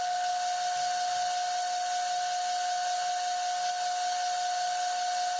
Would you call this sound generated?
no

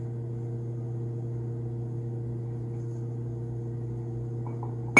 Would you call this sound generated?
no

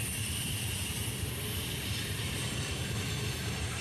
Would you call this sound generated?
no